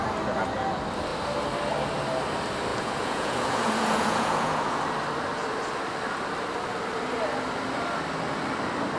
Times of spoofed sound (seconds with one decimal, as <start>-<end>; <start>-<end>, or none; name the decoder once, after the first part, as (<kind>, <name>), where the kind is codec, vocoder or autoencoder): 2.7-4.8 (vocoder, Vocos)